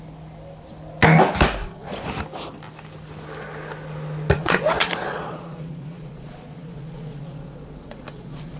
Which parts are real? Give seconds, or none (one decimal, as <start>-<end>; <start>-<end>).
0.0-1.6; 2.1-4.4